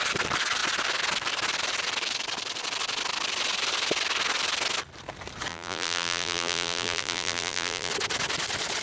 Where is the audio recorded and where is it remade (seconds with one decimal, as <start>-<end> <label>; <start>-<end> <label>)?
0.0-5.5 recorded; 5.5-7.9 remade; 7.9-8.8 recorded